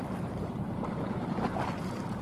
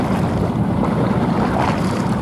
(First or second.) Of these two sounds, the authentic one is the second